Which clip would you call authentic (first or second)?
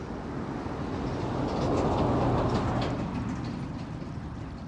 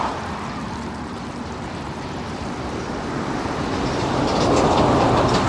first